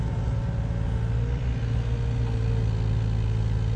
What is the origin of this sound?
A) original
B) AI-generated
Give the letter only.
A